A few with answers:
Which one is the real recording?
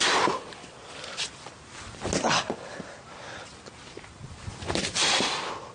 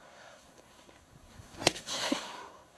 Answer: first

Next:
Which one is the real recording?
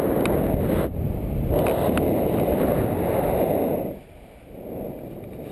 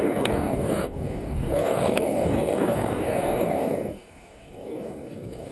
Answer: first